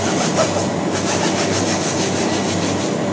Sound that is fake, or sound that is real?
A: real